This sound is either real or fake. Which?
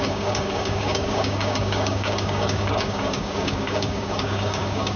fake